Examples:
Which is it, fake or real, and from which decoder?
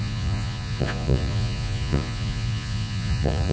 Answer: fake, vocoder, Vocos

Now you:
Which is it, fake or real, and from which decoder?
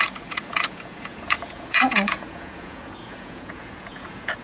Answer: fake, vocoder, Vocos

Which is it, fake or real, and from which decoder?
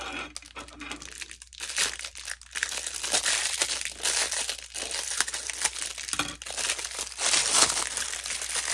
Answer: real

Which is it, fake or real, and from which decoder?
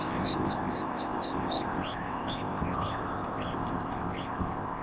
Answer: fake, codec, ZipCodec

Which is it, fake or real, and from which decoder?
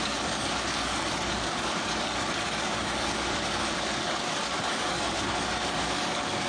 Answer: fake, codec, DAC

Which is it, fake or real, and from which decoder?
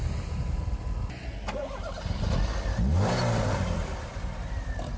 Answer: real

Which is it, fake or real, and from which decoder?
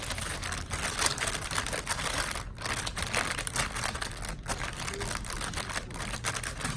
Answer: real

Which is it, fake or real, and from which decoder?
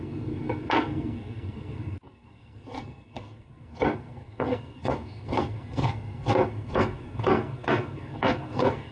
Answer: fake, codec, SNAC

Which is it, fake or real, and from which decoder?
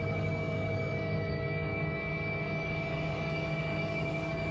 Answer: fake, codec, DAC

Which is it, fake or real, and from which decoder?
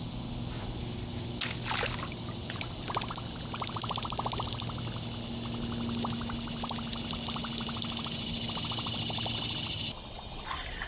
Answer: real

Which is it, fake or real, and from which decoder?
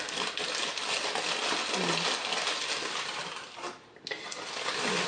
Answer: real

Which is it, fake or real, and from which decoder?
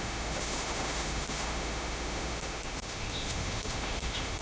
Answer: fake, autoencoder, DAC-VAE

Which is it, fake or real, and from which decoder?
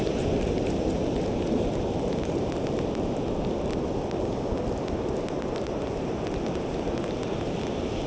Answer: real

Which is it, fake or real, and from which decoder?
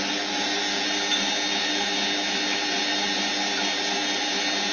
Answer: real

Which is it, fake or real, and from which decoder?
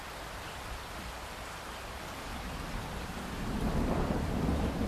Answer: fake, vocoder, BigVGAN v2